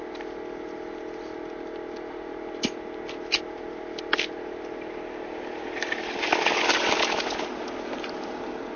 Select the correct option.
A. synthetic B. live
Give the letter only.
B